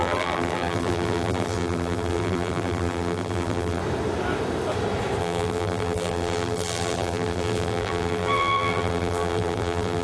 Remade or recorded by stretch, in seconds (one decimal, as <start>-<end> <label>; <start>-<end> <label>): 0.0-3.8 remade; 3.8-5.2 recorded; 5.2-10.0 remade